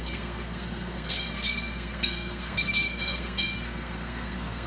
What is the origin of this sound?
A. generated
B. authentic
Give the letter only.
A